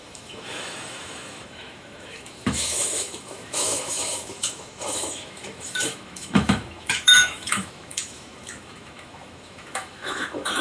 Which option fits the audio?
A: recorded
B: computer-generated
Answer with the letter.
B